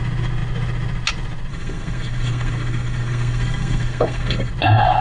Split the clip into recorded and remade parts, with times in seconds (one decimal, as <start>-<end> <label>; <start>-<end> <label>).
0.0-1.5 recorded; 1.5-4.5 remade; 4.5-5.0 recorded